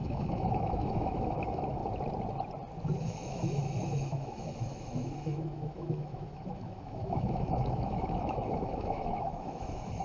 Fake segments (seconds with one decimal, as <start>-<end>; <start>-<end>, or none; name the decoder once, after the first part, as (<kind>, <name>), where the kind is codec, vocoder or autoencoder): 0.0-1.8 (autoencoder, DAC-VAE); 3.0-10.0

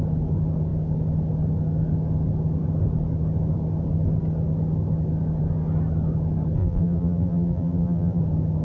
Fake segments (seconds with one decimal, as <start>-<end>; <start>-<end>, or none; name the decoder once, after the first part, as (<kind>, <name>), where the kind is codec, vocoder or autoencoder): 6.6-8.2 (vocoder, BigVGAN v2)

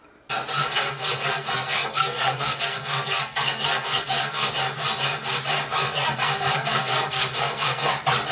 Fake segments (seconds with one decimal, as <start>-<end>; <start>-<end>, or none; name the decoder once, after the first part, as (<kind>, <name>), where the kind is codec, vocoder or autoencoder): 0.6-4.5 (codec, SNAC); 5.8-7.9

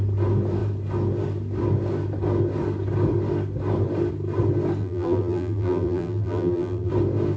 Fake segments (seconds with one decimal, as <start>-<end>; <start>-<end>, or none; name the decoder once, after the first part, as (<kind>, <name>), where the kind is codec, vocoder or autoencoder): 4.8-6.9 (vocoder, BigVGAN v2)